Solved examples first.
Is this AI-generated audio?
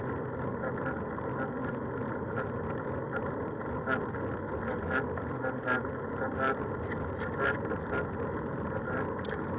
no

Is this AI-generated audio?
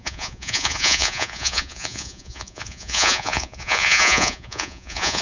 yes